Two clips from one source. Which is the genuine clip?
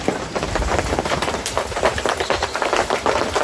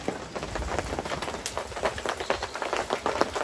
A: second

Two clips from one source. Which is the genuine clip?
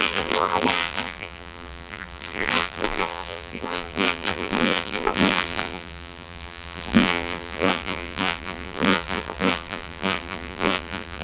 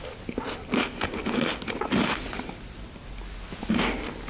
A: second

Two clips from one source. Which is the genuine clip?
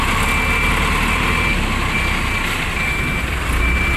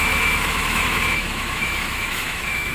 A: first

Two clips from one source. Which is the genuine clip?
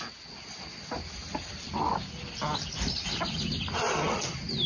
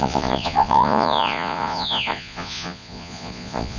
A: first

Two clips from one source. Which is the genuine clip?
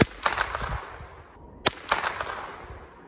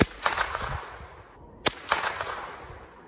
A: first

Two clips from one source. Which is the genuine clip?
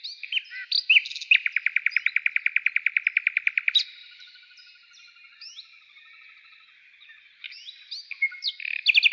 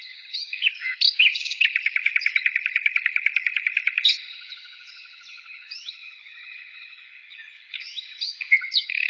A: first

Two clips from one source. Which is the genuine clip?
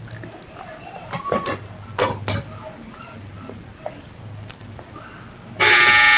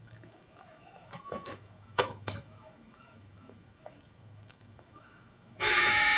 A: first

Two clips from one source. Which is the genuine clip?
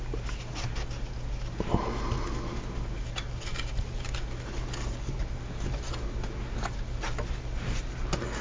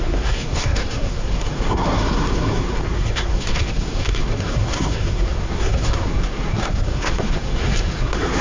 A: first